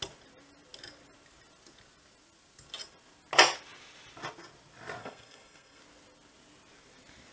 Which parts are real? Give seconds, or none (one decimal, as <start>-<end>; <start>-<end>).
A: 0.0-5.0; 5.8-7.3